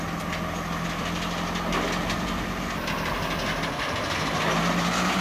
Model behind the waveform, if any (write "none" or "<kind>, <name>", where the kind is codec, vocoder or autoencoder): none